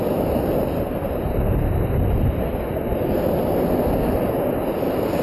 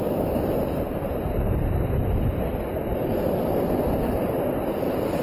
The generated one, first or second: second